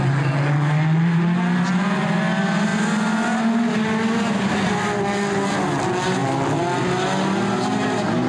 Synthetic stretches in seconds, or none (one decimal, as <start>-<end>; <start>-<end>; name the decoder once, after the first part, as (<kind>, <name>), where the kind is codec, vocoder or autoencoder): none